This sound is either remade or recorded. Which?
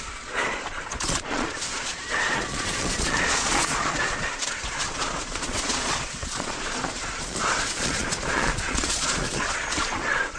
remade